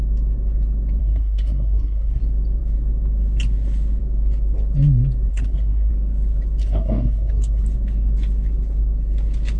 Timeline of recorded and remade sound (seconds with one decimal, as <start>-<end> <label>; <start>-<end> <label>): 0.0-1.0 recorded; 1.0-2.2 remade; 2.2-5.3 recorded; 5.3-5.9 remade; 5.9-6.6 recorded; 6.6-7.6 remade; 7.6-9.6 recorded